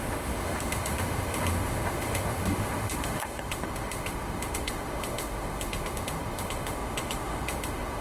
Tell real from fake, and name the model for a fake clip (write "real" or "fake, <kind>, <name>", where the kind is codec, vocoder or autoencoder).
fake, autoencoder, DAC-VAE